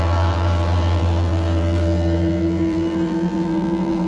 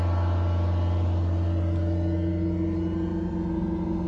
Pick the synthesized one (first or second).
first